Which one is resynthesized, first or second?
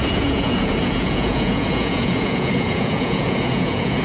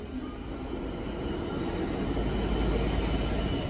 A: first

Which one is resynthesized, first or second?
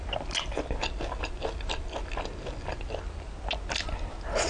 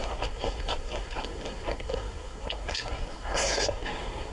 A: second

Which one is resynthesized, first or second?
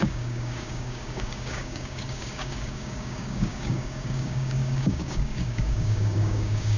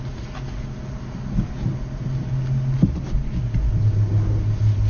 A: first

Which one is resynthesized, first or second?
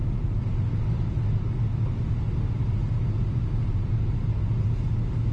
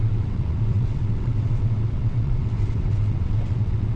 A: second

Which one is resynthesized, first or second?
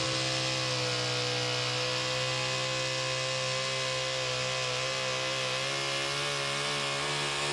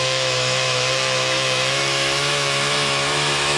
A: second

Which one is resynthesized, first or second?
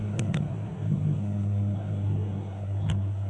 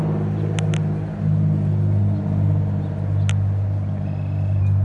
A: first